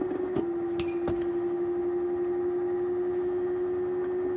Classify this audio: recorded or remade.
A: recorded